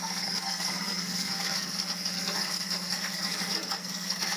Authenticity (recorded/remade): remade